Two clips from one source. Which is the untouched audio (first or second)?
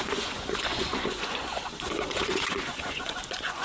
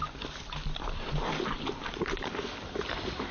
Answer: second